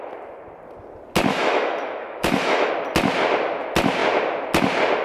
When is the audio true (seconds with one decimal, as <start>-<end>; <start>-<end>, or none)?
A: 0.0-1.3; 2.7-5.0